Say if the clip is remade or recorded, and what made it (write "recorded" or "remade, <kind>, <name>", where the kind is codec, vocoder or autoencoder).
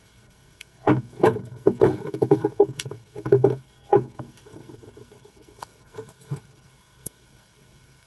remade, codec, SNAC